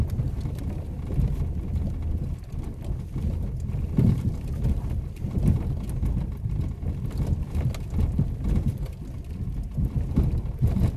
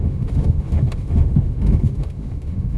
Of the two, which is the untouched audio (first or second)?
first